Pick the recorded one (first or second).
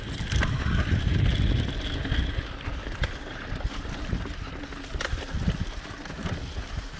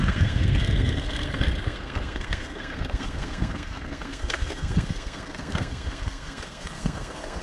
first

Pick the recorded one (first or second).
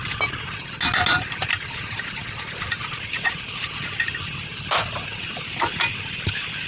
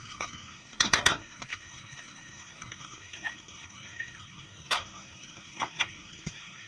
first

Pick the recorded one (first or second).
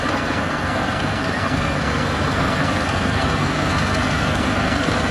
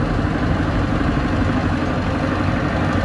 second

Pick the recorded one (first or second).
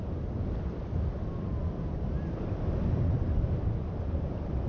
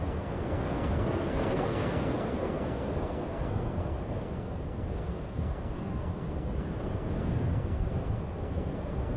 first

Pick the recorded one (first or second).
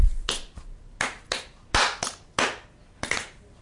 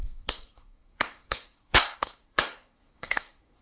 first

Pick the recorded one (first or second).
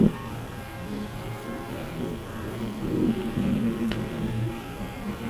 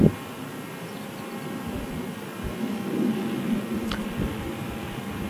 second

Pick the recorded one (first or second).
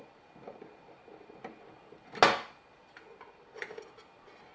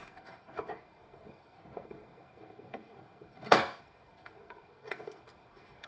first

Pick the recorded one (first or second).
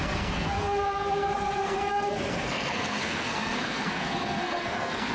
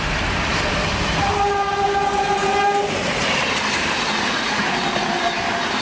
second